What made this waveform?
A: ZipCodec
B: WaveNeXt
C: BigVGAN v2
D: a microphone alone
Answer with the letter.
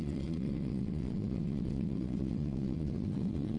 B